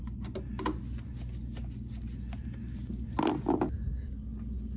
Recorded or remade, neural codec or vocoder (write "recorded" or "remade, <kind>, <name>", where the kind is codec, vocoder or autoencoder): recorded